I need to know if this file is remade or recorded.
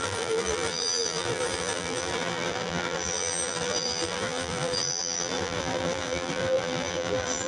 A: remade